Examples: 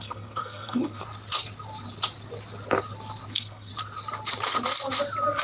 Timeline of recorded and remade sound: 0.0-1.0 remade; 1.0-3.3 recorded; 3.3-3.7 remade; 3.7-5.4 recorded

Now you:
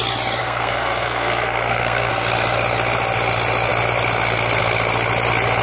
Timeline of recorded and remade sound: 0.0-0.4 recorded; 0.4-2.1 remade; 2.1-5.6 recorded